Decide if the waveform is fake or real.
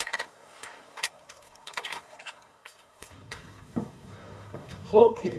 fake